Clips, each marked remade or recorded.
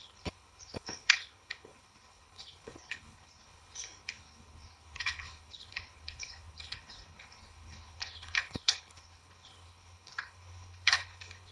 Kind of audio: remade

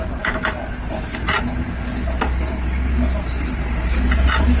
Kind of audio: recorded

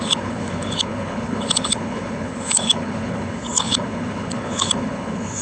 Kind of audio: remade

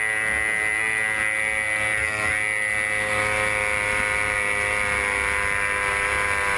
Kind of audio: recorded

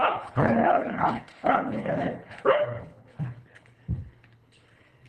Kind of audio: remade